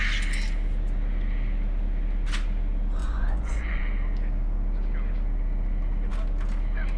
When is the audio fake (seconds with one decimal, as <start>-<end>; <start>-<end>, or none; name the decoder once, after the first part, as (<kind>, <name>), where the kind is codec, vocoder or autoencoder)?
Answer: 3.0-3.8 (vocoder, Vocos)